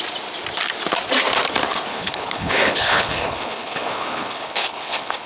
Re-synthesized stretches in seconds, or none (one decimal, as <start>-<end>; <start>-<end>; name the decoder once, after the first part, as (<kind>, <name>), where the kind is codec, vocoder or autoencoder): 1.9-5.3 (codec, HILCodec)

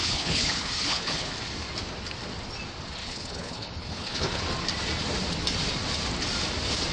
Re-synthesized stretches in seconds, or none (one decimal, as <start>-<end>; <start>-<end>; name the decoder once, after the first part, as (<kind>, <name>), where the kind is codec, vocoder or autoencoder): 0.0-1.3 (codec, HILCodec); 3.0-4.4

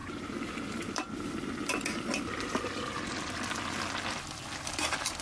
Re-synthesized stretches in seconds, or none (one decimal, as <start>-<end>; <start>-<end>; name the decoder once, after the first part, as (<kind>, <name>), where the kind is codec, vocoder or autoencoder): none

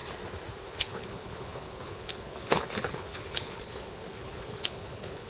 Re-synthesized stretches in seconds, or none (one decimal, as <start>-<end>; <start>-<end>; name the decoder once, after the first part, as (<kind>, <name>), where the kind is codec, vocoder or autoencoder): 0.6-5.3 (codec, HILCodec)

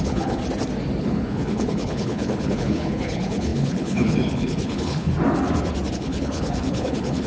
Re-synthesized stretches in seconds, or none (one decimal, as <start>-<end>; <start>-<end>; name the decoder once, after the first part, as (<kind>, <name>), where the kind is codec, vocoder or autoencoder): 0.0-0.4 (codec, HILCodec); 1.0-5.1; 5.9-7.3